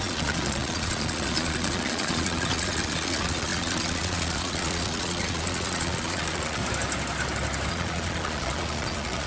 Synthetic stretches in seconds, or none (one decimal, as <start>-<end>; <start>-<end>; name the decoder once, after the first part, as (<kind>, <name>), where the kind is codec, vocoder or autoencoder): 0.0-6.6 (vocoder, Vocos); 7.7-9.3